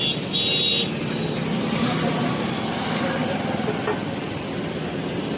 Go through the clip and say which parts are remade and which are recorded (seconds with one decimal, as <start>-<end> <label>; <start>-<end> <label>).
0.0-5.4 recorded